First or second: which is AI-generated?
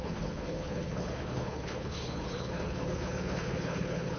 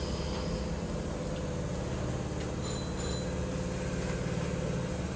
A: first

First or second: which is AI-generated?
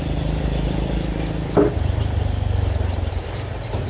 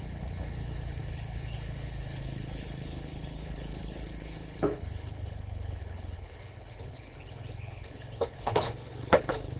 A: second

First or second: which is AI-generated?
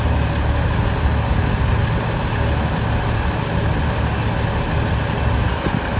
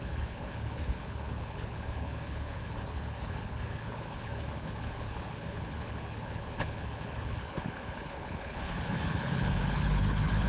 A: second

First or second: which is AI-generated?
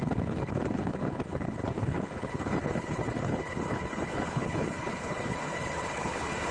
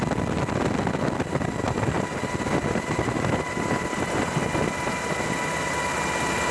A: first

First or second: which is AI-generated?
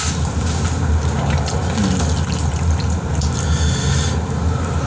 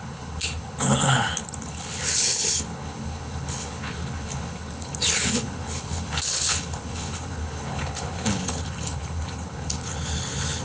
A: second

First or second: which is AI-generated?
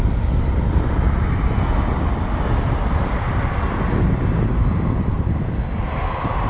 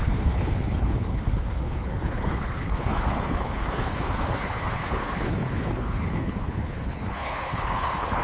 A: second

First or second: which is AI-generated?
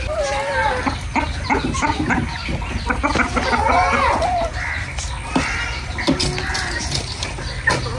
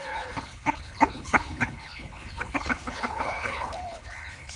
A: second